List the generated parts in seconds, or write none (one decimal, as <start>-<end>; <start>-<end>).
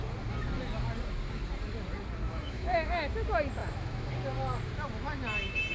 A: 2.2-3.1; 3.6-4.1